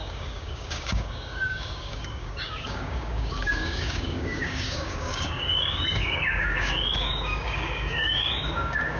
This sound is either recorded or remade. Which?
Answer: remade